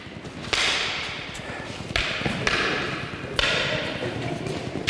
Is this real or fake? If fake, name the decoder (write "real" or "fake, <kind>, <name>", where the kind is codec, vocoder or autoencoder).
fake, vocoder, BigVGAN v2